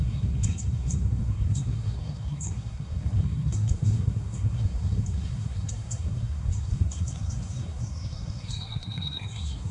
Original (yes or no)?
no